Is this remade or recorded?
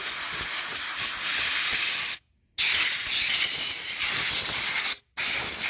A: recorded